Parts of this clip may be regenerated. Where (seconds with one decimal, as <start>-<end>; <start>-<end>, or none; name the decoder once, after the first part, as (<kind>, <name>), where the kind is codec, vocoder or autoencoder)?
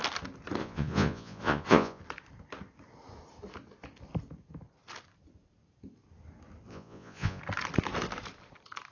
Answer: 0.6-2.0 (vocoder, Vocos); 6.7-7.4